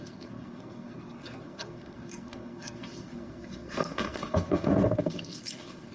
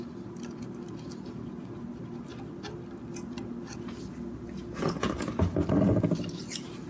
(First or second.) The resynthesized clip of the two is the first